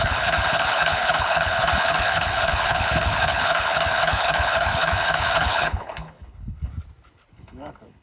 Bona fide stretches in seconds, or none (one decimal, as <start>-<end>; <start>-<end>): 6.7-7.3